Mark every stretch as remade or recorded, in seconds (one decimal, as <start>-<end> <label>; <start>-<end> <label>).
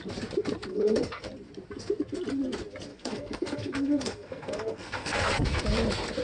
0.0-0.7 recorded; 0.7-1.2 remade; 1.2-2.9 recorded; 2.9-5.6 remade; 5.6-6.2 recorded